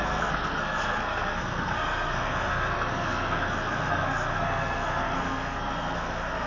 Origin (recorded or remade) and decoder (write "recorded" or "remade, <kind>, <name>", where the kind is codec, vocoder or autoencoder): remade, codec, SNAC